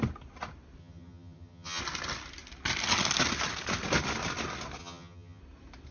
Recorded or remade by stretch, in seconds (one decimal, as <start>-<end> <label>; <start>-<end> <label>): 0.0-0.8 recorded; 0.8-1.8 remade; 1.8-4.8 recorded; 4.8-5.4 remade; 5.4-5.9 recorded